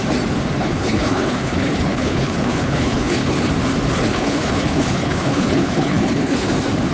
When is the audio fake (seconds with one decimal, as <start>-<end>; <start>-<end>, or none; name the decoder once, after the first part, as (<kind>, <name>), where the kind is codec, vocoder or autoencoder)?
0.6-3.5 (codec, HILCodec); 4.1-6.5